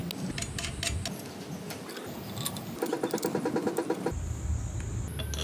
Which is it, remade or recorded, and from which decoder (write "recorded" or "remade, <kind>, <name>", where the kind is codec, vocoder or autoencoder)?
recorded